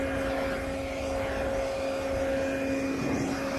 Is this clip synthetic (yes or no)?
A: no